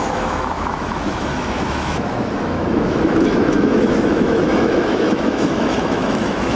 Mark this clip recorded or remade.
remade